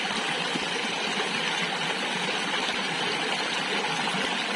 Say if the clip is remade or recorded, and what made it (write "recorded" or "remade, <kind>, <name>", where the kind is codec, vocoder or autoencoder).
recorded